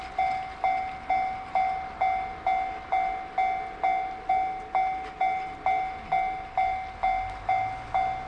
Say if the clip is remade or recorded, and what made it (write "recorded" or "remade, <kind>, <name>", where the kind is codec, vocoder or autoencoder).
recorded